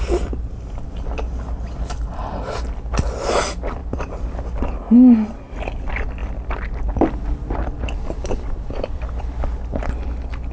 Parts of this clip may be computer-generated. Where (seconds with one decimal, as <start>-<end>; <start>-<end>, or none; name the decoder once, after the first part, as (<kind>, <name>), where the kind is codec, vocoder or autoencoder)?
none